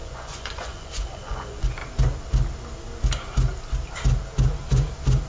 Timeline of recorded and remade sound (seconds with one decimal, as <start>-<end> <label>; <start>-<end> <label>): 0.0-1.8 remade; 1.8-5.3 recorded